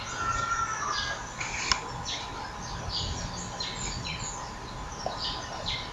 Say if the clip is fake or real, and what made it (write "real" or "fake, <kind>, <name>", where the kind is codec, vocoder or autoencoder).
real